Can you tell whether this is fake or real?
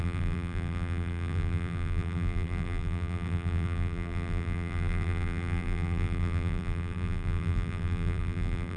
fake